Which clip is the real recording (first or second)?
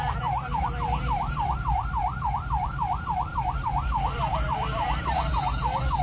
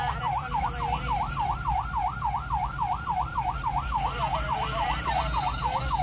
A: second